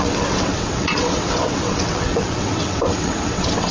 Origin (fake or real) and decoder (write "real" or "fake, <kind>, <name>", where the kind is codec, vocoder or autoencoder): fake, vocoder, WaveNeXt